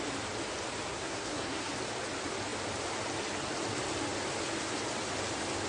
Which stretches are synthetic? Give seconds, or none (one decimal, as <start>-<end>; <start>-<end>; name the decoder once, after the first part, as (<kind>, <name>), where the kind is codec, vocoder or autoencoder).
0.9-1.7 (codec, SNAC)